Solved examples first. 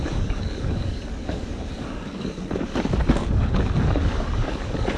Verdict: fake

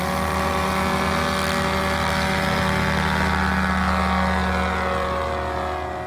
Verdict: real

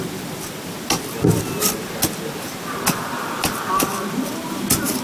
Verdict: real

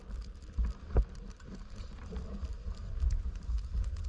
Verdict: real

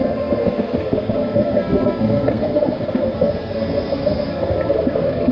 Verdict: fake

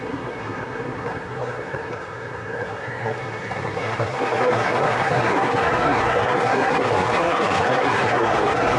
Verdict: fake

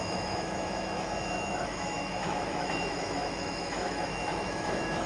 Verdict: fake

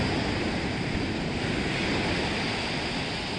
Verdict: real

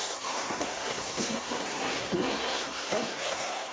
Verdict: fake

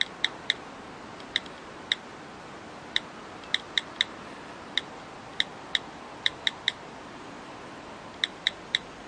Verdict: real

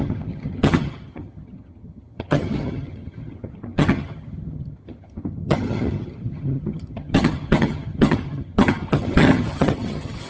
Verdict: fake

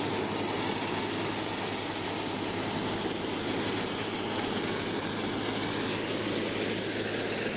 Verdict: real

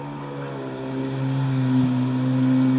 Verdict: real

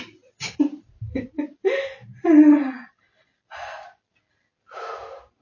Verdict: real